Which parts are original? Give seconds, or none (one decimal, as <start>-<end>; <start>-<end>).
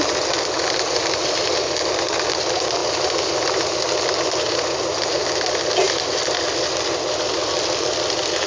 0.0-8.5